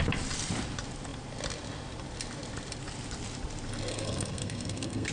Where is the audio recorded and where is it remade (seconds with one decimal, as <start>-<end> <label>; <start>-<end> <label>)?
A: 0.0-3.9 recorded; 3.9-5.1 remade